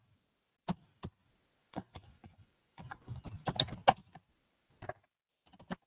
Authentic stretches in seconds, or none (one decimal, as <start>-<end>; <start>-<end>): 0.0-1.6; 3.2-5.9